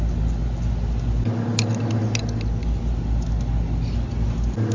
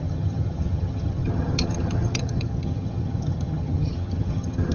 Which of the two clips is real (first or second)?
first